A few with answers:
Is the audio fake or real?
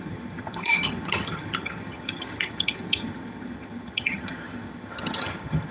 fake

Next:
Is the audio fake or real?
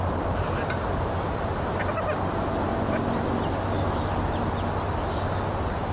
real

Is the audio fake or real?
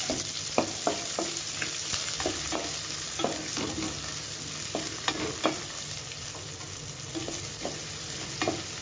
real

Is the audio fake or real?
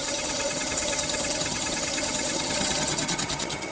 fake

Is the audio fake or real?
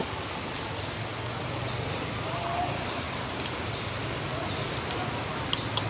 real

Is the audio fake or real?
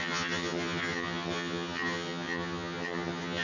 fake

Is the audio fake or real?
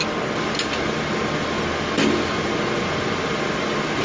real